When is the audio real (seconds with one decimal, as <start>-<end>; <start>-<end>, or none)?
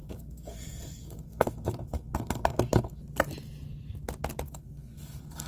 3.0-4.5